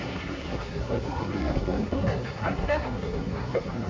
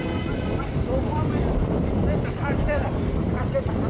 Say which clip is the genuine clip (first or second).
second